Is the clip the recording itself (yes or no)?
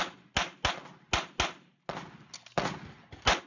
yes